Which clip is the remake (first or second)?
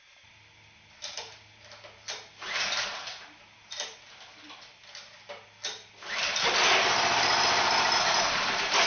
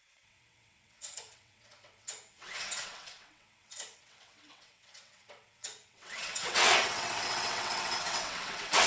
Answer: second